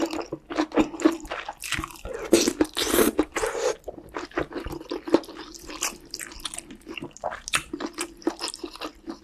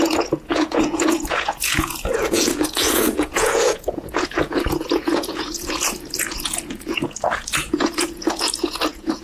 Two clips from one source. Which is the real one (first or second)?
first